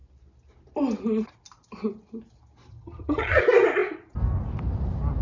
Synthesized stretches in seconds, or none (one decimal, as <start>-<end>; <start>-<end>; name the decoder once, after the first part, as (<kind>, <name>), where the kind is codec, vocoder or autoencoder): 2.7-3.4 (vocoder, HiFi-GAN)